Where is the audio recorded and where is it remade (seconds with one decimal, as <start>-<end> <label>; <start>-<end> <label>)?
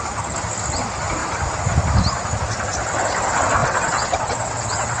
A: 0.0-3.6 recorded; 3.6-5.0 remade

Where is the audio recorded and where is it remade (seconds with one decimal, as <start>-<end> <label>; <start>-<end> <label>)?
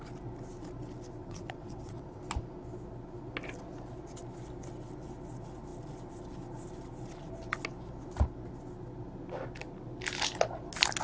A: 0.0-1.2 recorded; 1.2-2.2 remade; 2.2-11.0 recorded